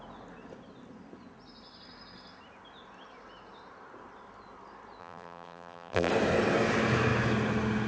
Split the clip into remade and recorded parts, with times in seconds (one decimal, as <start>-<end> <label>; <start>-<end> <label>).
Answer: 0.0-5.0 recorded; 5.0-6.1 remade; 6.1-7.9 recorded